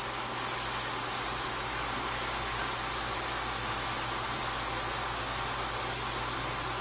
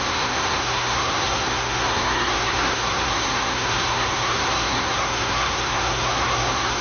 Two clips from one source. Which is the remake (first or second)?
second